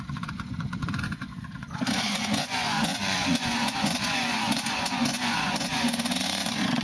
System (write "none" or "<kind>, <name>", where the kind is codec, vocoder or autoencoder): vocoder, Vocos